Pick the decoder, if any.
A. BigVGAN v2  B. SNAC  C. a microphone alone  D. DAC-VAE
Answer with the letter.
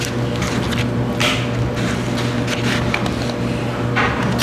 C